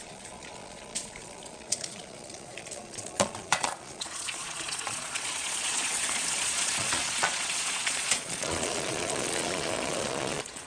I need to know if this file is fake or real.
fake